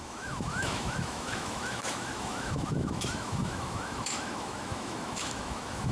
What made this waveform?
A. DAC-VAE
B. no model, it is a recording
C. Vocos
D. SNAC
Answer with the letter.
A